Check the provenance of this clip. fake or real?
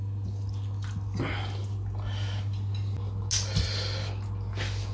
real